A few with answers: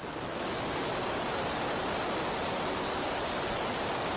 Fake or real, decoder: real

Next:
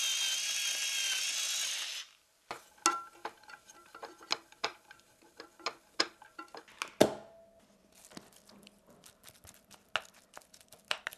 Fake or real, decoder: real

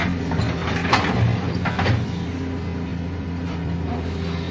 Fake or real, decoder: real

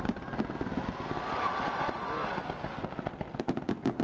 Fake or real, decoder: real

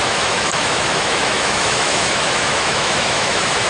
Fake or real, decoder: fake, autoencoder, DAC-VAE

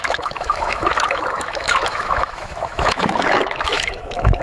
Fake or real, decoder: fake, autoencoder, DAC-VAE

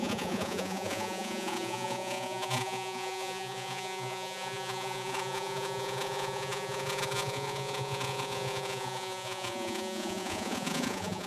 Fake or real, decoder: fake, vocoder, Vocos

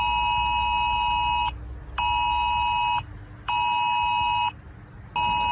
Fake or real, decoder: real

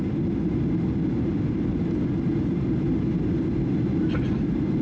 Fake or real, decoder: real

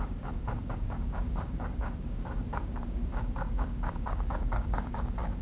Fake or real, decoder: fake, codec, DAC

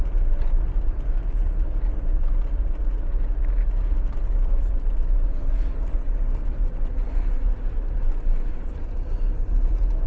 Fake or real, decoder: fake, vocoder, BigVGAN v2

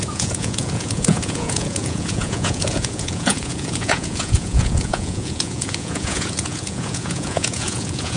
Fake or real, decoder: fake, vocoder, Vocos